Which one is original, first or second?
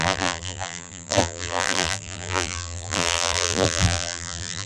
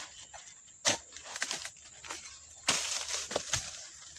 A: second